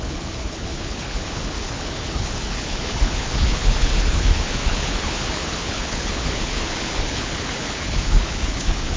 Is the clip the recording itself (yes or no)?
no